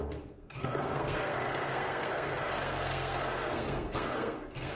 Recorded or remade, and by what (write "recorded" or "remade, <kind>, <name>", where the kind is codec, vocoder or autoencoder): remade, codec, SNAC